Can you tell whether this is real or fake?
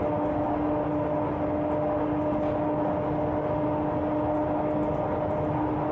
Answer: real